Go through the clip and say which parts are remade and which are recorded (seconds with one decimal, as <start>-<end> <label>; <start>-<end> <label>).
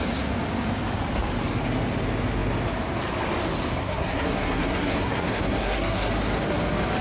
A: 0.0-3.8 recorded; 3.8-6.1 remade; 6.1-7.0 recorded